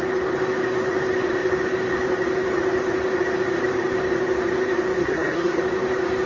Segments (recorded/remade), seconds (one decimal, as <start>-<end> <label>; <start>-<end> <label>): 0.0-5.0 recorded; 5.0-5.6 remade; 5.6-6.3 recorded